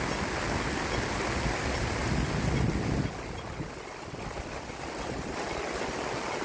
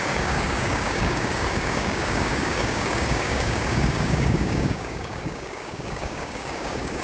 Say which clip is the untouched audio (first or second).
first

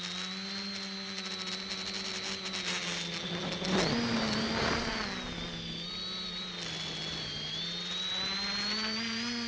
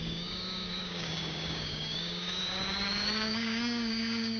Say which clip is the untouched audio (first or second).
first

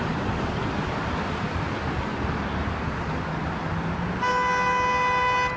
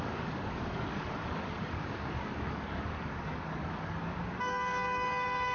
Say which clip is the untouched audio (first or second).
first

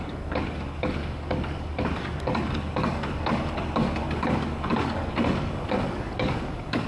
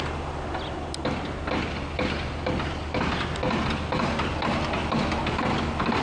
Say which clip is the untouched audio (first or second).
second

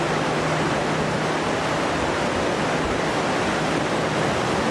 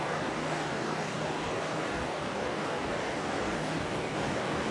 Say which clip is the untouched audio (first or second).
first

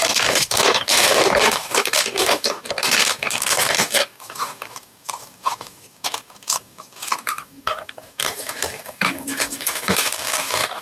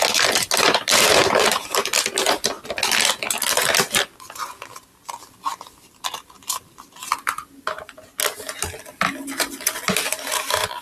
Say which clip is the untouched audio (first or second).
second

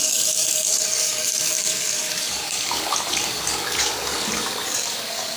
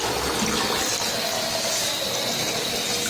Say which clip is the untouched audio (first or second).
second